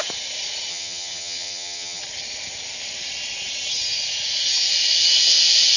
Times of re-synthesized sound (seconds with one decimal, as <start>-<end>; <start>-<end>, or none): 0.7-2.0